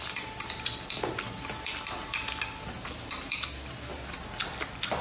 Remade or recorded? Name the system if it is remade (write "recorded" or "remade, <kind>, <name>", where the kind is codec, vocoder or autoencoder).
recorded